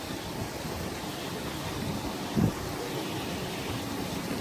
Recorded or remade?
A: recorded